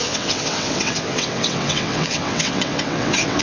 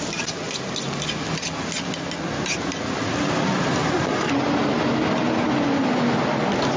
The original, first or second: second